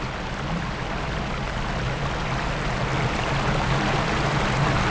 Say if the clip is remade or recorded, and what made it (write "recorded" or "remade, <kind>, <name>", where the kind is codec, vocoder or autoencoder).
recorded